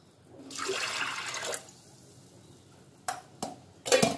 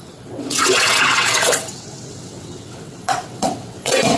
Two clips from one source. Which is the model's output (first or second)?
second